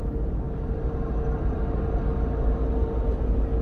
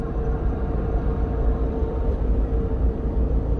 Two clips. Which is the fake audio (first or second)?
second